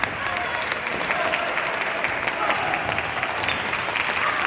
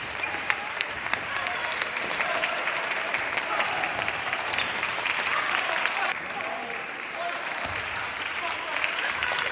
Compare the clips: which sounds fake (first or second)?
second